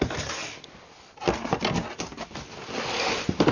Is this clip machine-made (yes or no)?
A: no